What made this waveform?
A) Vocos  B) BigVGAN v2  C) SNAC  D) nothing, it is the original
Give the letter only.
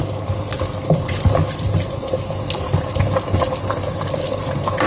D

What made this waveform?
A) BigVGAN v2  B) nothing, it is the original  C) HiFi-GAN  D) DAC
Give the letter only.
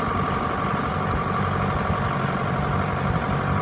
A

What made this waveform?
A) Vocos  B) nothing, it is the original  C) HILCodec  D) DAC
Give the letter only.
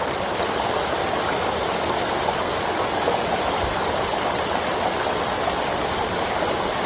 B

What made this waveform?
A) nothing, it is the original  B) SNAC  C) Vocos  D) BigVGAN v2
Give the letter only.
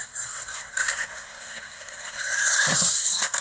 B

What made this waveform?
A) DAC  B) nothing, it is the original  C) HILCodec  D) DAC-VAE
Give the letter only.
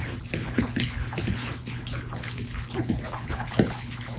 C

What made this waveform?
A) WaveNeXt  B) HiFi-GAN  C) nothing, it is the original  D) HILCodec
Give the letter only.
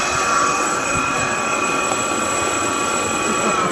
A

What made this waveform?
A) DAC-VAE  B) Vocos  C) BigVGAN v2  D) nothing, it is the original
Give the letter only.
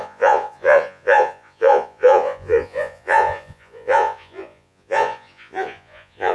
B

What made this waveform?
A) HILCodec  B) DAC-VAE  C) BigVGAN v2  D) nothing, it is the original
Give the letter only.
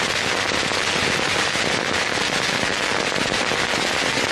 D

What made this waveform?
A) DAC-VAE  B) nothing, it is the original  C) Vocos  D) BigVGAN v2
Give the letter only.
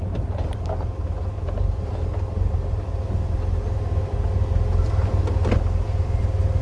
B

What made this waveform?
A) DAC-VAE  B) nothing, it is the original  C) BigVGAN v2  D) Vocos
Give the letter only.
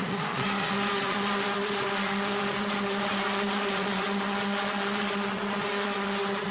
D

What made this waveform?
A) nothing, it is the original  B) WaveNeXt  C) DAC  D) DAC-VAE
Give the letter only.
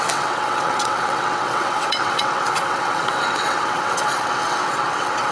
B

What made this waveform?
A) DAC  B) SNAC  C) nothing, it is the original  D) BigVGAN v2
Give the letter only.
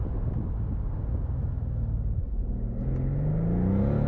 C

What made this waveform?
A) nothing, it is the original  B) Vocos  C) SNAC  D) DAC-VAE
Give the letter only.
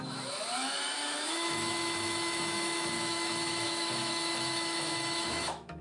D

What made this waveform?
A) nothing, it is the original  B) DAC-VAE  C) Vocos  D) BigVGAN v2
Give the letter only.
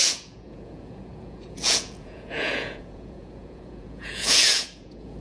C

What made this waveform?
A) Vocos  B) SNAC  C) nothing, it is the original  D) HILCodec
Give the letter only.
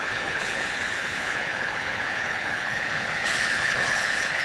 D